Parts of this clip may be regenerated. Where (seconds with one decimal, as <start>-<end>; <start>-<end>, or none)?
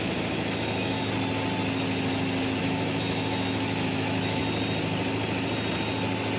0.0-1.0; 2.6-4.4